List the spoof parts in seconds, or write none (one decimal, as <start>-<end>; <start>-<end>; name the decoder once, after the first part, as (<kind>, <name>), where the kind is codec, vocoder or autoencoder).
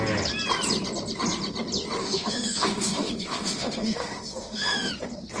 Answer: 2.0-4.9 (autoencoder, DAC-VAE)